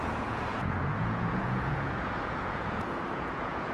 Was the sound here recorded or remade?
remade